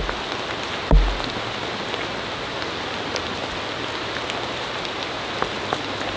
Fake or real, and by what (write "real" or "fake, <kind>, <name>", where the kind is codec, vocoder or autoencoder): real